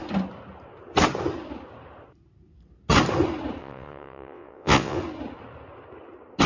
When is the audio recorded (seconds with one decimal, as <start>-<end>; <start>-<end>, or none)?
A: 0.0-3.6; 5.0-6.5